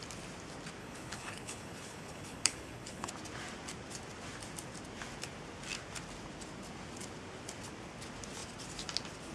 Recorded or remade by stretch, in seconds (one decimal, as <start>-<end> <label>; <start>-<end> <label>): 0.0-0.8 recorded; 0.8-3.1 remade; 3.1-9.3 recorded